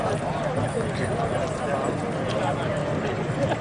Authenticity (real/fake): real